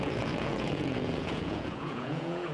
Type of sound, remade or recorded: remade